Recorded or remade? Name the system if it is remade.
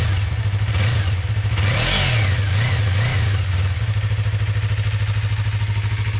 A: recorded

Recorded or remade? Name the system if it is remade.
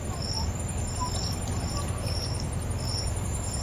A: remade, vocoder, BigVGAN v2